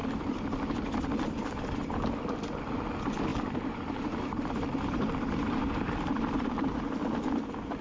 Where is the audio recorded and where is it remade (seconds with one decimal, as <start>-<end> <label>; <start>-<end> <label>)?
0.0-2.4 remade; 2.4-3.3 recorded; 3.3-6.9 remade; 6.9-7.8 recorded